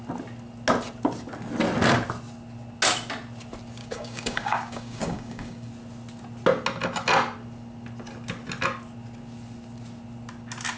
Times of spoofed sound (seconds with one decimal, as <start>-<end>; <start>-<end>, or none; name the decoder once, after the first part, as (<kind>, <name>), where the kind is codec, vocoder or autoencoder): 3.8-5.7 (codec, DAC)